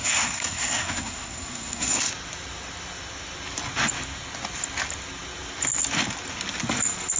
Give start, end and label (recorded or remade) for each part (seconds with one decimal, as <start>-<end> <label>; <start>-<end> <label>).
0.0-2.0 remade; 2.0-7.2 recorded